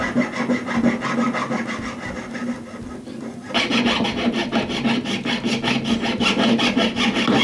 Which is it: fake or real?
real